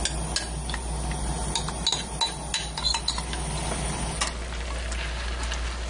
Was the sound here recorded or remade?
recorded